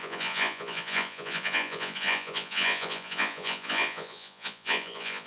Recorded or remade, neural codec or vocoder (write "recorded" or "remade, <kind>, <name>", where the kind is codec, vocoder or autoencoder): remade, vocoder, Vocos